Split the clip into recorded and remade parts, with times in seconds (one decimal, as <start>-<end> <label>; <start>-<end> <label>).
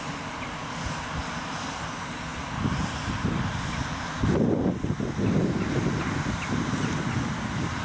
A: 0.0-7.8 recorded